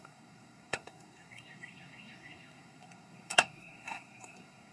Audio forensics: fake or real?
fake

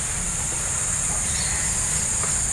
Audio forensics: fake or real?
real